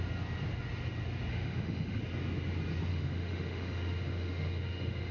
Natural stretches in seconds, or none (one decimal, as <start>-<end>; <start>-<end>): 0.0-1.3; 2.0-2.9